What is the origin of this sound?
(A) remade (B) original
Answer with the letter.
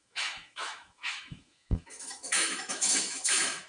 A